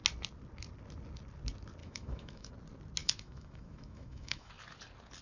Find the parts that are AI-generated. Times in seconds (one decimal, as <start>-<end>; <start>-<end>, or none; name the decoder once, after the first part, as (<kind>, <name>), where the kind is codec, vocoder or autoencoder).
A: 1.8-2.5 (autoencoder, DAC-VAE); 3.0-4.5